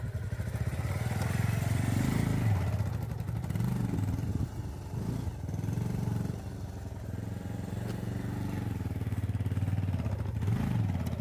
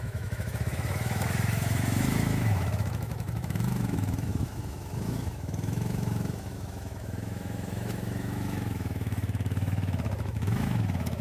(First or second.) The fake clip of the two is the second